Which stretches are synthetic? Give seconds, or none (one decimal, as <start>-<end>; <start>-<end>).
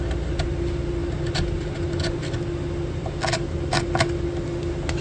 none